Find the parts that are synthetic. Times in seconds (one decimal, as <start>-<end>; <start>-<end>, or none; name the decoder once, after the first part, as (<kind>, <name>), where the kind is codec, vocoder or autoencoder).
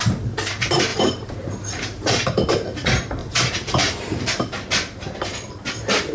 0.9-2.5 (vocoder, BigVGAN v2); 3.2-4.2